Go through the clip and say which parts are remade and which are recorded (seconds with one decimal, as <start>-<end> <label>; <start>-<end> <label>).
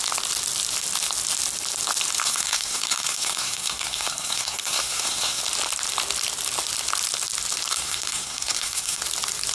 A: 0.0-2.2 recorded; 2.2-5.4 remade; 5.4-7.7 recorded; 7.7-9.0 remade; 9.0-9.5 recorded